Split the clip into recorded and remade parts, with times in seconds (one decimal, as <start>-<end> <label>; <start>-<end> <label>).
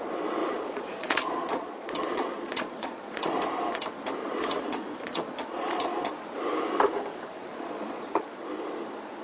0.0-0.4 recorded; 0.4-3.3 remade; 3.3-4.2 recorded; 4.2-6.1 remade; 6.1-7.5 recorded; 7.5-8.4 remade; 8.4-9.2 recorded